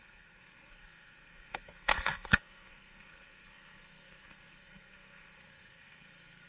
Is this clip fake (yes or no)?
yes